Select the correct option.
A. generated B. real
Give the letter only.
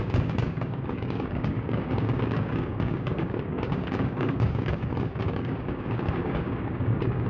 A